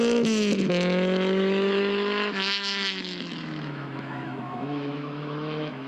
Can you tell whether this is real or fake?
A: fake